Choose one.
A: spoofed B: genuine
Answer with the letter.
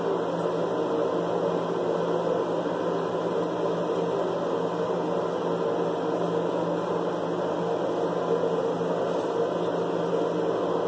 B